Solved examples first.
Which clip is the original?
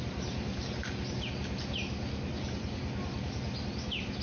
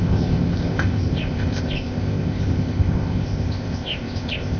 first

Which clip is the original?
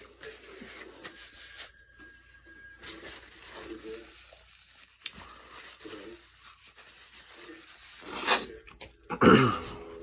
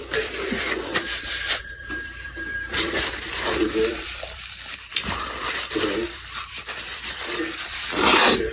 first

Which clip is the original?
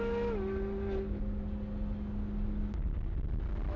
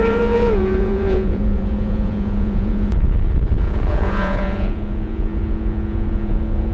first